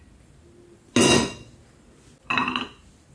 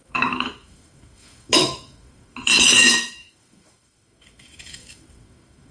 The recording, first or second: first